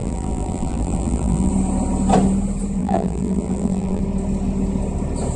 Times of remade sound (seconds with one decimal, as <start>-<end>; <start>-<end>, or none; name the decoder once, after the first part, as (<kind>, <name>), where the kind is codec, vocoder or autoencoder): 0.0-1.5 (vocoder, BigVGAN v2); 2.8-4.0